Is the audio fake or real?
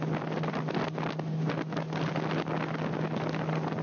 real